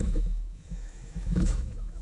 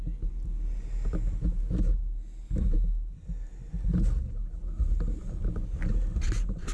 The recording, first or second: second